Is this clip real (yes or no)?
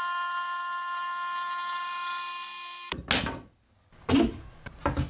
yes